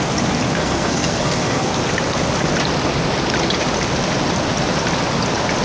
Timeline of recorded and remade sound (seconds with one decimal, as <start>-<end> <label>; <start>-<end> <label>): 0.0-0.6 recorded; 0.6-1.7 remade; 1.7-5.6 recorded